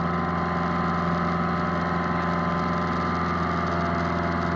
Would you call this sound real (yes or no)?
yes